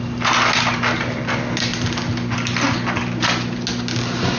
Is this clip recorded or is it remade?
recorded